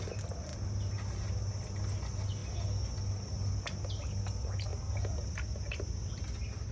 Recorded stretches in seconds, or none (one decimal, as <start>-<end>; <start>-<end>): 0.0-6.7

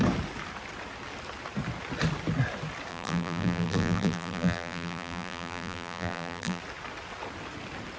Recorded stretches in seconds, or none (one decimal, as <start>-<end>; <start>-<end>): 0.0-2.9; 6.6-8.0

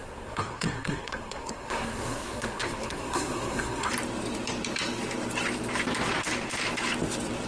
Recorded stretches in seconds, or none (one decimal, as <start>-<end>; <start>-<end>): 3.9-7.5

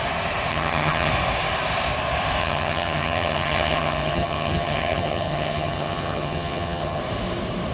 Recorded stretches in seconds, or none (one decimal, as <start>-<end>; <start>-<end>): 0.0-0.5; 1.1-2.4; 7.0-7.7

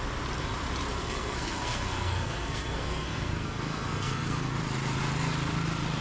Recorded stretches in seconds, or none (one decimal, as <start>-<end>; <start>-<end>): 0.0-0.9; 4.5-6.0

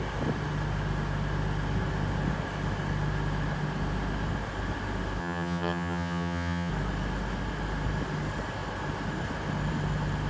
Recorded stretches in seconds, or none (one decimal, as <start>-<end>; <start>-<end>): 0.0-5.2; 6.7-10.3

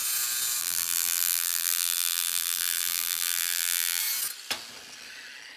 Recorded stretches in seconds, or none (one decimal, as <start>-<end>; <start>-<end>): 0.0-0.6; 4.0-5.6

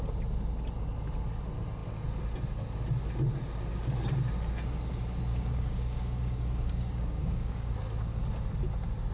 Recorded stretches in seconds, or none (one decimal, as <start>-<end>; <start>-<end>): 0.0-5.3; 7.8-9.1